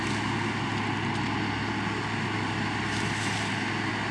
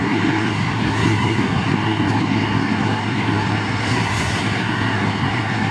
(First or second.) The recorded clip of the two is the first